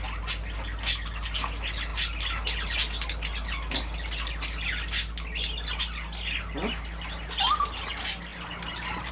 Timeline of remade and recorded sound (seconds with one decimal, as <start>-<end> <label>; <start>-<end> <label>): 0.0-9.1 recorded